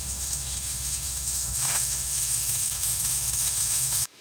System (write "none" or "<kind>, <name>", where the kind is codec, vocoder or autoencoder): autoencoder, DAC-VAE